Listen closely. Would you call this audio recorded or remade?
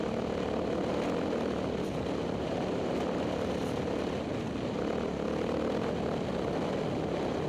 recorded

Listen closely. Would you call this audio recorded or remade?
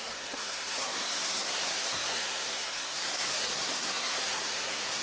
remade